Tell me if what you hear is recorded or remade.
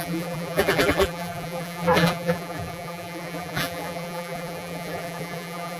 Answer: remade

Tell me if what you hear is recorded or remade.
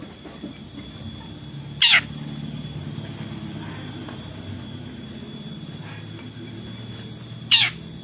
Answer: recorded